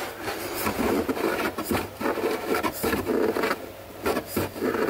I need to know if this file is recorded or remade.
recorded